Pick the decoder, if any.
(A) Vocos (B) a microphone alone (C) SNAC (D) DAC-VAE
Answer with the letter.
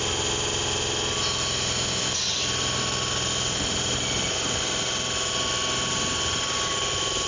B